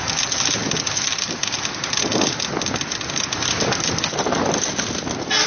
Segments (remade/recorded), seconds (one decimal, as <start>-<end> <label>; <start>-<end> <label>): 0.0-5.5 recorded